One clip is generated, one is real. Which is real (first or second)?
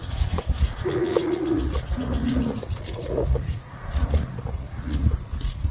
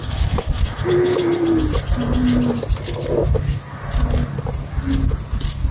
second